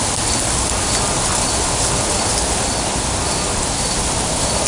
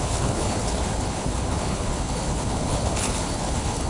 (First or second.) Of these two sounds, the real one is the first